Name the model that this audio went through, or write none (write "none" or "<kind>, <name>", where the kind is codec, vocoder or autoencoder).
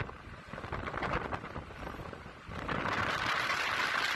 none